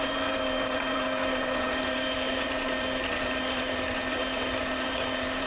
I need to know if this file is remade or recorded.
remade